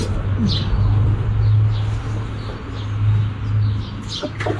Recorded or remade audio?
recorded